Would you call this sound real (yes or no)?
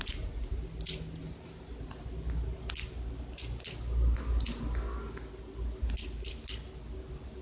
yes